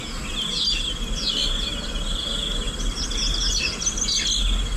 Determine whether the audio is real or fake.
real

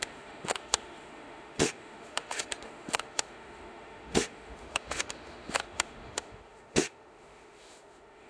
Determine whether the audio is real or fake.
fake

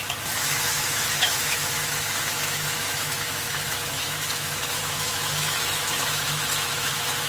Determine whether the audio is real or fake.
fake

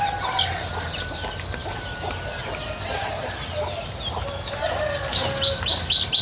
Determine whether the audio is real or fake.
real